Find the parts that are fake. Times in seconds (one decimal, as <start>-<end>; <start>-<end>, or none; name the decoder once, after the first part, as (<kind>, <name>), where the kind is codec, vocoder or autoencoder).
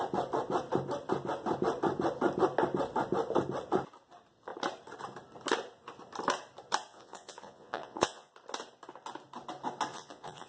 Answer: 6.9-8.3 (vocoder, Vocos); 9.9-10.5